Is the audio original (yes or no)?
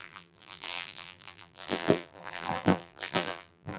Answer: no